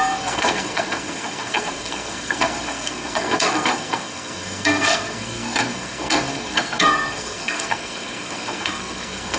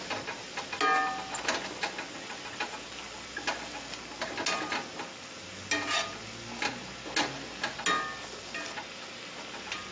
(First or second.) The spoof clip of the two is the first